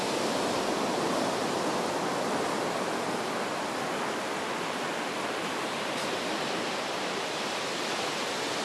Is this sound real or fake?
real